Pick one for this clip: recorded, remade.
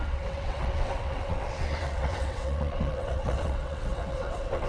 remade